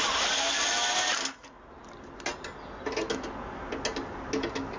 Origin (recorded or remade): recorded